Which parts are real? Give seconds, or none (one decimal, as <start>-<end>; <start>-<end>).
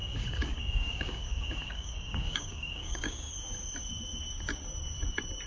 3.3-5.5